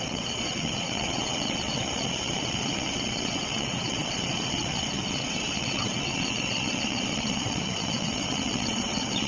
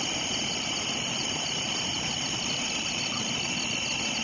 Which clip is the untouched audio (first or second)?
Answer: second